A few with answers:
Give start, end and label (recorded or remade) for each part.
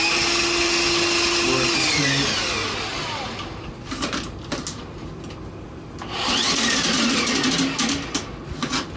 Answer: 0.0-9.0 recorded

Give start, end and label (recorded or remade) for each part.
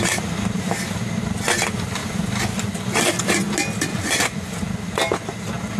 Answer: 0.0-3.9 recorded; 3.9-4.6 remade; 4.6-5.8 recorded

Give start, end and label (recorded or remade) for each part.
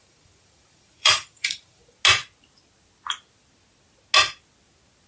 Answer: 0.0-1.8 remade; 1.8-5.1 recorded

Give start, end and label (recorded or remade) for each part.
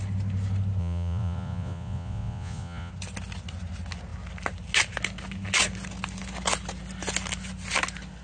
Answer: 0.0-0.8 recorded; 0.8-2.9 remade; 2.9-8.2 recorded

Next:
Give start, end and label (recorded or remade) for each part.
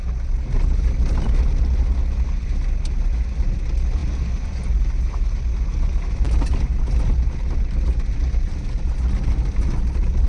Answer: 0.0-10.3 recorded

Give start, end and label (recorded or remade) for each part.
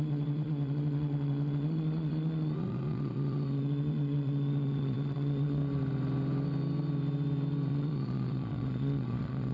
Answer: 0.0-5.6 remade; 5.6-7.7 recorded; 7.7-9.5 remade